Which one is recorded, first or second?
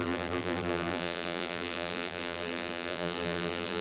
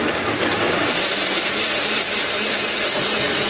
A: second